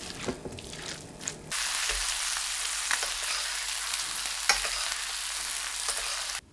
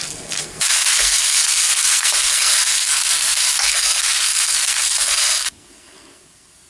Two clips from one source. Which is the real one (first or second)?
first